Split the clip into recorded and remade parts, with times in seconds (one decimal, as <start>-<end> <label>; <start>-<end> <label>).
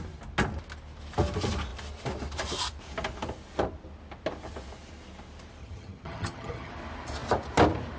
0.0-5.6 recorded; 5.6-6.7 remade; 6.7-8.0 recorded